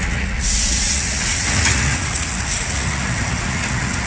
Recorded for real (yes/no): no